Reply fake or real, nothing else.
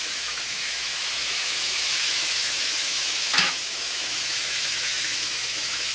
fake